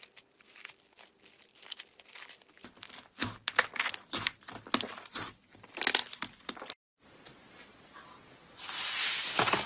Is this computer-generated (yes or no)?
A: no